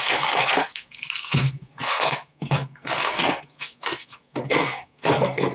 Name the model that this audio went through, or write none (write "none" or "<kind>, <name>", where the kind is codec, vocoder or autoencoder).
codec, SNAC